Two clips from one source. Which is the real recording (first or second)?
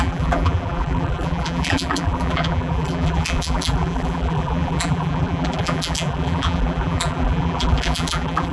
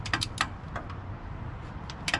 second